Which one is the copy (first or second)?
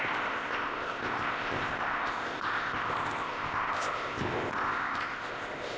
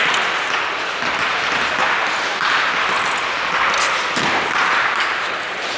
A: first